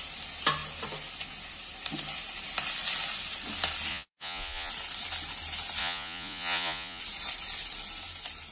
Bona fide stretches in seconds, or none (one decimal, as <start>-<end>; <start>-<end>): 0.0-3.9; 4.7-5.8; 7.0-8.5